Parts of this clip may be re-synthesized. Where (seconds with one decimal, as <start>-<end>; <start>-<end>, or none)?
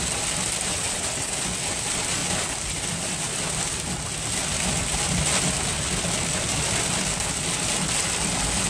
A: 0.7-1.3